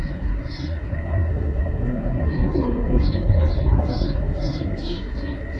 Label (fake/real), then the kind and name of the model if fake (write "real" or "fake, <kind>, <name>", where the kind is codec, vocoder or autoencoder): fake, codec, SNAC